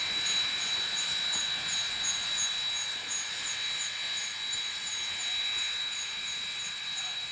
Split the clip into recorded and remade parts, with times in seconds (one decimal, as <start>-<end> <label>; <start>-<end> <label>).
0.0-7.3 recorded